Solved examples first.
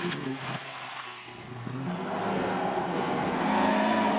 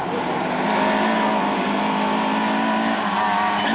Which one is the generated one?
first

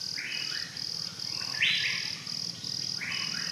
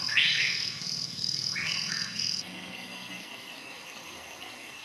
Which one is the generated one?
second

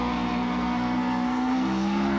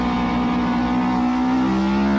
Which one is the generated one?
first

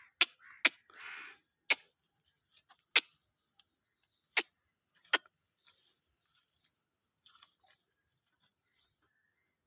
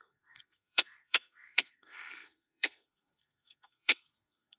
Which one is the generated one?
second